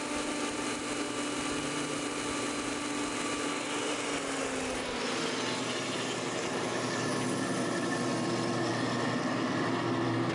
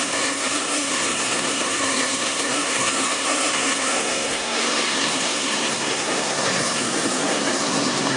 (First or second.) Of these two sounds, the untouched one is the first